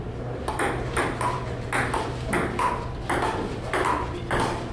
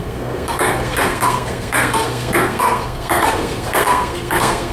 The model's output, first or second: second